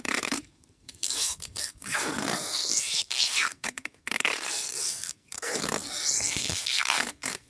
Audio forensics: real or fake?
fake